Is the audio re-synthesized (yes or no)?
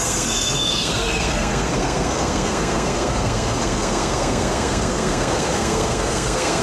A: yes